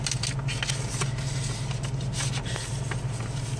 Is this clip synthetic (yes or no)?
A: no